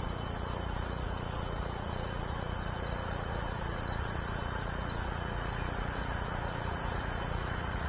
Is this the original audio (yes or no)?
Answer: no